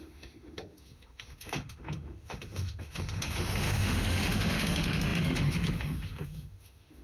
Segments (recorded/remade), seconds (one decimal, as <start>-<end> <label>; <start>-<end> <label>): 0.0-7.0 remade